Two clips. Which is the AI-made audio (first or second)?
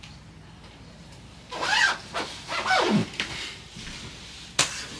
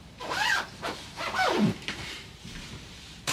second